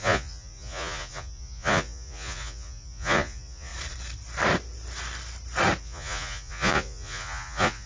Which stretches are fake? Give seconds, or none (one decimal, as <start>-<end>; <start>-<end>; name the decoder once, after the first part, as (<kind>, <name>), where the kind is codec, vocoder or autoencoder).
0.0-3.7 (vocoder, Vocos); 5.8-7.9

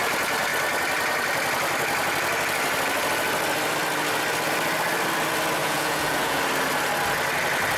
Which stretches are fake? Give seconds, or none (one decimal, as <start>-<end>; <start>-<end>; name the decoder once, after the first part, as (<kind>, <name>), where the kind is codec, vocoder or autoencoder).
5.6-6.4 (vocoder, Vocos)

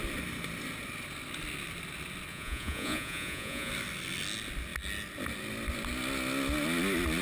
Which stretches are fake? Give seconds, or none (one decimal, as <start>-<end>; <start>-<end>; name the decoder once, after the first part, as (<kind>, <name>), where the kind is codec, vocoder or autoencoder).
2.3-3.7 (vocoder, Vocos)